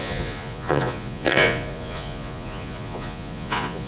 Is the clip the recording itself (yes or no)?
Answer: no